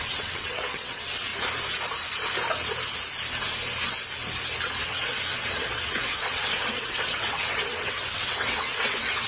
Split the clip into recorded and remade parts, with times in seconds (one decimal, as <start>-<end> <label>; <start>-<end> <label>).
0.0-1.3 remade; 1.3-4.8 recorded; 4.8-9.3 remade